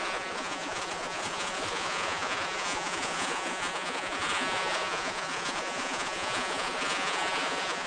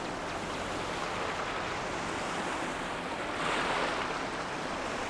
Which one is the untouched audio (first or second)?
second